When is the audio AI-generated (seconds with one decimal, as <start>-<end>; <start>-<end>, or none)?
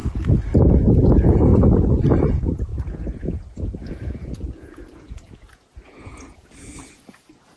0.9-1.5; 2.2-7.6